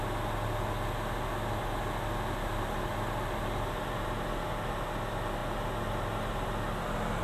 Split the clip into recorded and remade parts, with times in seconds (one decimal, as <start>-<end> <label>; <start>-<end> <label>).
0.0-7.2 recorded